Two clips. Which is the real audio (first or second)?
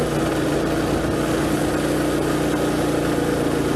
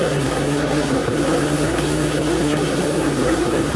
first